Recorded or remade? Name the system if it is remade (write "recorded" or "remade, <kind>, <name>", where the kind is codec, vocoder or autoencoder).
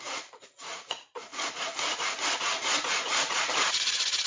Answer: remade, vocoder, Vocos